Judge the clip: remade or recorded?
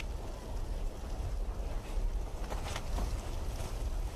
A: recorded